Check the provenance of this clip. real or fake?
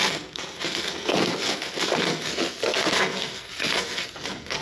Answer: fake